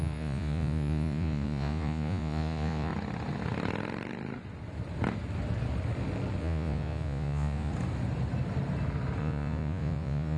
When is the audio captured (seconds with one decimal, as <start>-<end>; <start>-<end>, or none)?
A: 2.9-6.4; 7.7-9.2